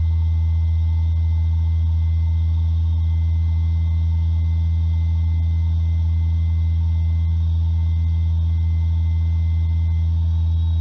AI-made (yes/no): no